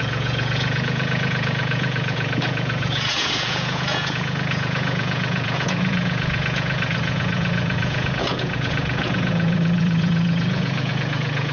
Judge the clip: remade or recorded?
remade